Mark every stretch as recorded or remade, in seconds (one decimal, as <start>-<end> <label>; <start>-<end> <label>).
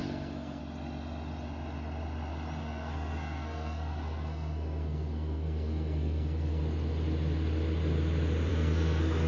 0.0-0.6 remade; 0.6-2.6 recorded; 2.6-6.6 remade; 6.6-8.5 recorded; 8.5-9.3 remade